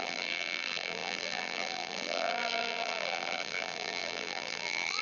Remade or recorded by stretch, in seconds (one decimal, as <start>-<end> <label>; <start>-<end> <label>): 0.0-5.0 remade